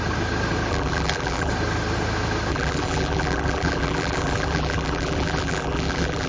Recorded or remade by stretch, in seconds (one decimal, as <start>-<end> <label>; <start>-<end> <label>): 0.0-0.7 recorded; 0.7-1.5 remade; 1.5-2.5 recorded; 2.5-6.3 remade